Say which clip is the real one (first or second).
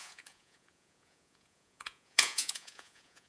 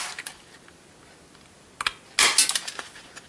second